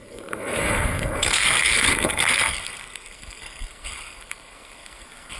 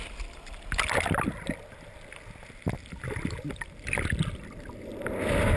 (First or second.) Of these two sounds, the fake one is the first